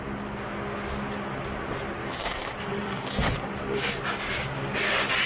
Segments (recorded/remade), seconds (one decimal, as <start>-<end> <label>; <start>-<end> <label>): 0.0-2.0 recorded; 2.0-4.0 remade; 4.0-5.2 recorded